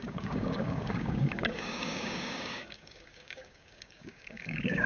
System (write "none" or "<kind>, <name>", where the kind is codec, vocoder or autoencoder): codec, DAC